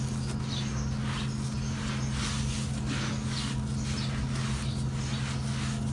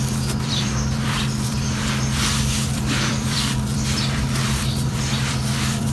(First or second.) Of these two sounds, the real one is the first